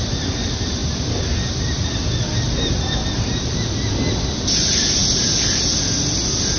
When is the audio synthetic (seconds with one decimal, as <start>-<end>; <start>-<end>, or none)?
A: none